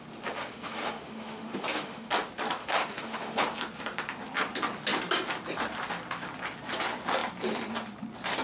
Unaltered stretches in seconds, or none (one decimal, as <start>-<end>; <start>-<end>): 0.0-0.4; 2.1-2.6; 3.4-8.4